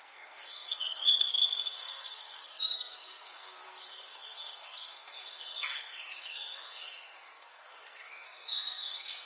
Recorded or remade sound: remade